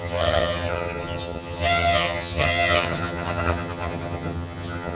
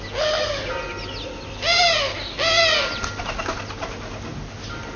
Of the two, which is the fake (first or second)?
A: first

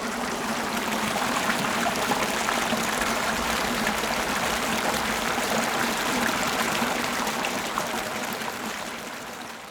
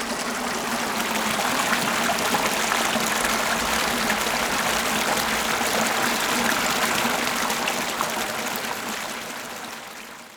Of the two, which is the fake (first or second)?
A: first